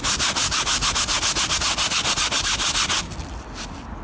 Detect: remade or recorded recorded